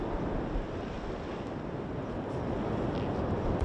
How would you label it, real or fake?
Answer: real